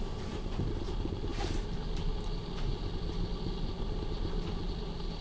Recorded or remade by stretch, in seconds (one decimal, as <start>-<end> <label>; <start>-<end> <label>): 0.0-5.2 recorded

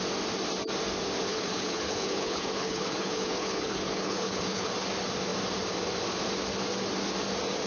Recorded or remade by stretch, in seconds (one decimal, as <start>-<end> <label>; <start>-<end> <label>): 0.0-1.3 recorded; 1.3-4.7 remade; 4.7-7.7 recorded